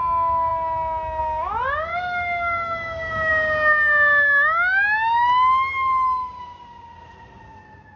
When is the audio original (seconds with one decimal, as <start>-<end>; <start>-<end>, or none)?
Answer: 0.0-1.9; 3.3-8.0